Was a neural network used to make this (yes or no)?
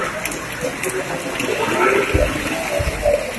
no